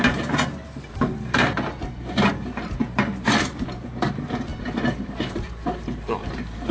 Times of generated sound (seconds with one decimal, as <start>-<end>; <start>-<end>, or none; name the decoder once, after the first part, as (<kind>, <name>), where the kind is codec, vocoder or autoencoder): 0.0-6.7 (vocoder, BigVGAN v2)